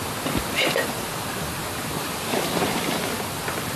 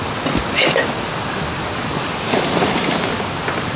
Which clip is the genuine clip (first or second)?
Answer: second